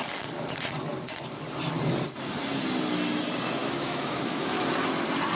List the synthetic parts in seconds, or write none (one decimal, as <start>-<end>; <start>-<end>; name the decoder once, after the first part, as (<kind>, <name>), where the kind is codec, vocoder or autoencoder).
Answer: 3.6-4.6 (autoencoder, DAC-VAE)